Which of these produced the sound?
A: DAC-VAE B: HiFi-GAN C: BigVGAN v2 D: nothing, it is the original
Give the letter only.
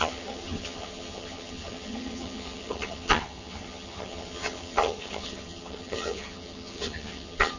B